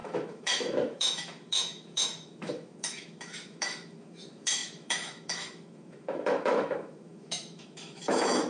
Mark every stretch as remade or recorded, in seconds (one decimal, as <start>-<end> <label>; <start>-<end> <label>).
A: 0.0-8.5 remade